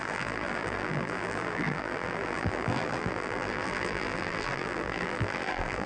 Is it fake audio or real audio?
fake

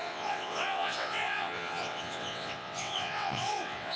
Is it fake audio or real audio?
fake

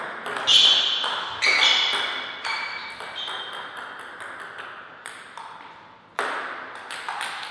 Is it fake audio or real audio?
real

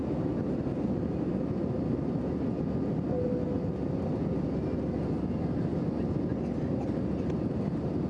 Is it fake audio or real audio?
real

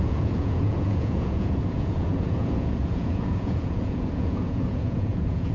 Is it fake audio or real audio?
fake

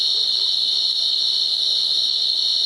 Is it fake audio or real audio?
real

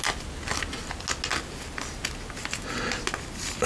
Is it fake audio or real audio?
real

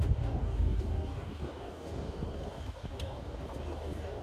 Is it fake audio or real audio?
fake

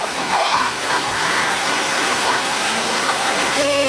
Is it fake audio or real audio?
fake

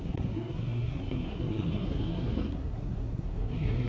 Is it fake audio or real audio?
fake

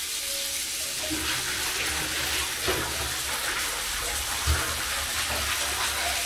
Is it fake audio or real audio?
real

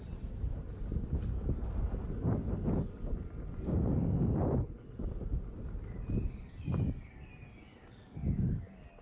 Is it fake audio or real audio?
real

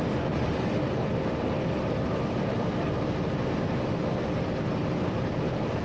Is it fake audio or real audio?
real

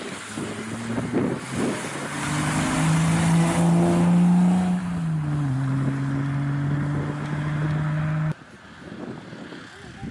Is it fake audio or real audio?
real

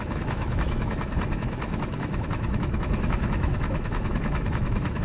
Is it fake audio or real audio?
fake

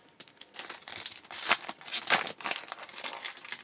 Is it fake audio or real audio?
real